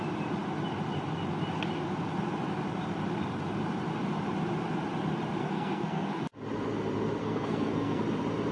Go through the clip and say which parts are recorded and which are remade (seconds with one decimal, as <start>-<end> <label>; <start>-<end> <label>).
0.0-5.4 recorded; 5.4-6.2 remade; 6.2-7.2 recorded; 7.2-8.0 remade; 8.0-8.5 recorded